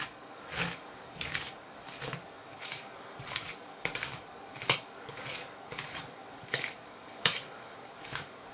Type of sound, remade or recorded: remade